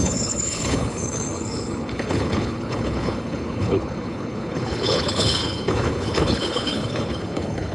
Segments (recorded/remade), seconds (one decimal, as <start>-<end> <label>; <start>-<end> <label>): 0.0-7.7 remade